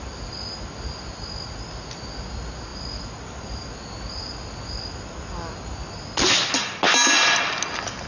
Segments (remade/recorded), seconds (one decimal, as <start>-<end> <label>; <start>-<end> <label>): 0.0-8.1 recorded